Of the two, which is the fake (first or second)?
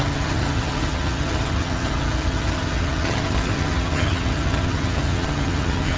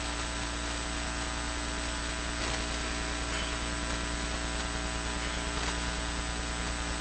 first